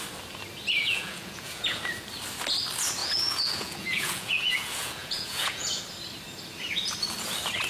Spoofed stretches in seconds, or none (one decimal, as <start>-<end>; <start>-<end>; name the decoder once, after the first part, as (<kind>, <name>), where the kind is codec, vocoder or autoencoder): 0.8-1.8 (vocoder, Vocos); 3.0-5.8

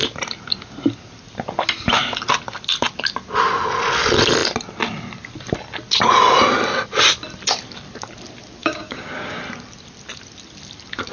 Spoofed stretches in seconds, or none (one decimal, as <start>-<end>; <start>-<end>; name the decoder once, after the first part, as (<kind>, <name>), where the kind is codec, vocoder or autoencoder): 8.6-9.4 (codec, DAC)